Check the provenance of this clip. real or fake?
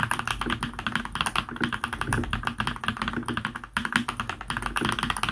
real